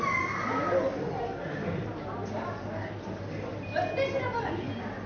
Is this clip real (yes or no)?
yes